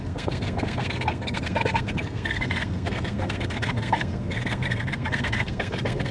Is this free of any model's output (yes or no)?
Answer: no